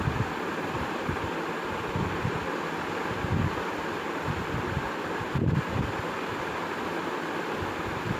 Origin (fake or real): real